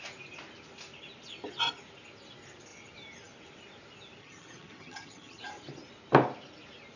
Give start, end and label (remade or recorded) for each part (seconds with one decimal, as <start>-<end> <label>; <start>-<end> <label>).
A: 0.0-4.2 recorded; 4.2-5.4 remade; 5.4-7.0 recorded